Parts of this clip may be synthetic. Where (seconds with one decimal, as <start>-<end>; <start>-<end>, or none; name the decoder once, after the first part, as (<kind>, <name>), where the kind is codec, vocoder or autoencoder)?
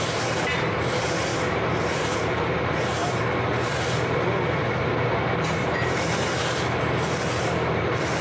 0.0-3.0 (vocoder, BigVGAN v2); 4.8-5.6